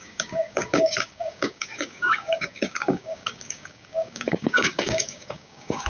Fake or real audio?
fake